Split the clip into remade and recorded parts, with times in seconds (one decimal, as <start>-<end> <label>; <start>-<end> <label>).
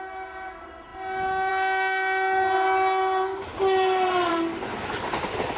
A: 0.0-5.6 recorded